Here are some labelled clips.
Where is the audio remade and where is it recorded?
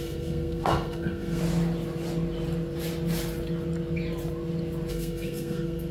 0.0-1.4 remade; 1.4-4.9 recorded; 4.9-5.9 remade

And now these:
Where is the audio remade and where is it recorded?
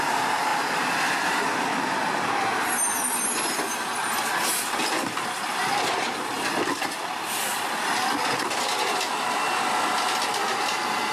0.0-11.1 recorded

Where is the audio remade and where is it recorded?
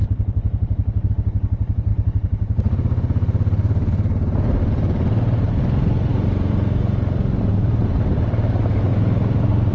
0.0-1.1 remade; 1.1-1.9 recorded; 1.9-5.6 remade; 5.6-9.7 recorded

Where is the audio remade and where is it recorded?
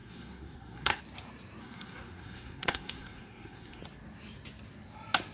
0.0-1.0 remade; 1.0-1.6 recorded; 1.6-3.8 remade; 3.8-5.3 recorded